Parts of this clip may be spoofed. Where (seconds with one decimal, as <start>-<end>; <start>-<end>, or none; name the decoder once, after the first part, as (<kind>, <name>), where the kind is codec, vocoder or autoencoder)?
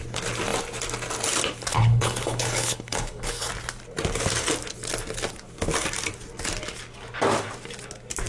1.7-3.5 (codec, HILCodec)